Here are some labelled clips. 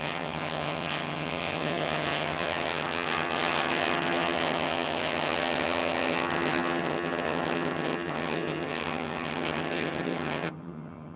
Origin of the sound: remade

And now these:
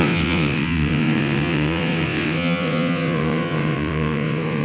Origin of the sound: remade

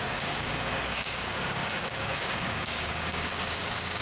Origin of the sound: remade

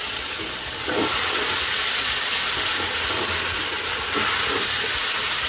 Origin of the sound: recorded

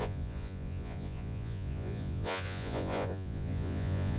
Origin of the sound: remade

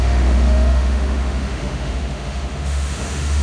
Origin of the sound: remade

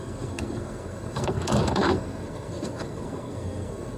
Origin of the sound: remade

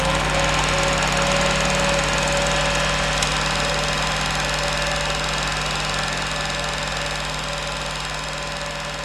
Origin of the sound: recorded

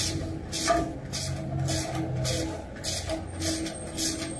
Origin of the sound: recorded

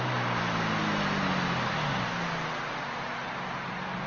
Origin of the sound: recorded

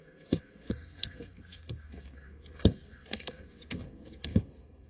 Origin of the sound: remade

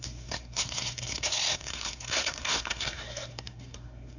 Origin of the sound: remade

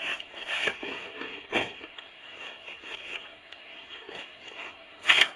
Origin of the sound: remade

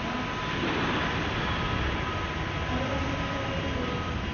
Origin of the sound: recorded